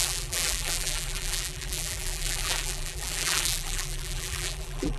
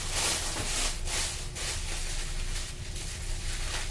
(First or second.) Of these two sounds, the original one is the second